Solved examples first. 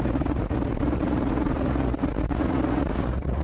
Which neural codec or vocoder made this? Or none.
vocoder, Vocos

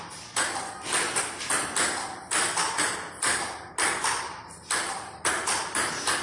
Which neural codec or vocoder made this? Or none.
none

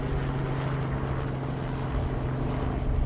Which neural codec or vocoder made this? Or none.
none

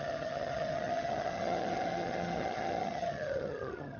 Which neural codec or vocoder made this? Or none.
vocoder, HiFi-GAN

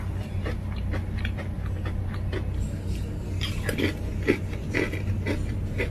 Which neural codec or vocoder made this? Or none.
none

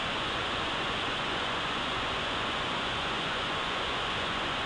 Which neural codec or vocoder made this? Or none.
vocoder, Vocos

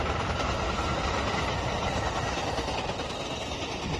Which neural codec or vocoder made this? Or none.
none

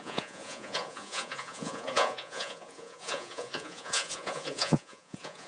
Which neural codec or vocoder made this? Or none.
vocoder, Vocos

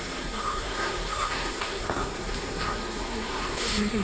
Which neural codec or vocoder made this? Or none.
codec, SNAC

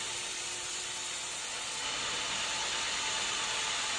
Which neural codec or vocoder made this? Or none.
none